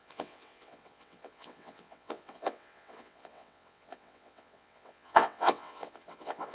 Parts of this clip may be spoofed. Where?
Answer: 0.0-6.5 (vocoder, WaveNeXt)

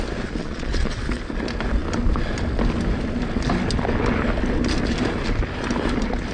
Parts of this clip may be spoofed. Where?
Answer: 0.4-1.0 (vocoder, Vocos)

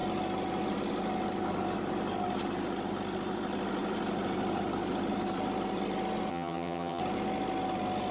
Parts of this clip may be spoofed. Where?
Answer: 6.3-7.0 (vocoder, HiFi-GAN)

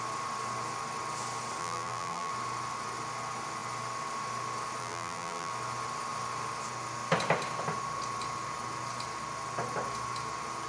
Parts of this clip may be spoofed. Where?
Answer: 1.6-2.3 (vocoder, BigVGAN v2); 4.8-5.5

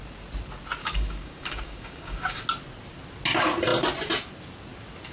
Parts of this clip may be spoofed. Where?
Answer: 0.8-2.4 (codec, DAC)

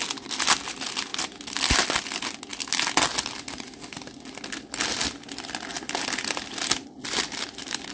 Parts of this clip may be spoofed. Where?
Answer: none